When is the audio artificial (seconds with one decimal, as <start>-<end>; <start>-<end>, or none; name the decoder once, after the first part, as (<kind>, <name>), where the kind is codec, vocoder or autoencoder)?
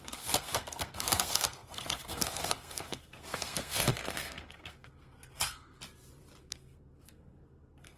0.0-5.8 (codec, SNAC); 6.4-8.0